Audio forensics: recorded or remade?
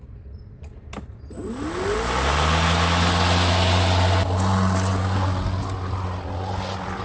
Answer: recorded